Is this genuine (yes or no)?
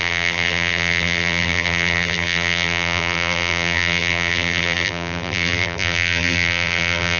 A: no